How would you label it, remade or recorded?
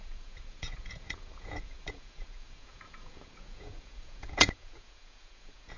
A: remade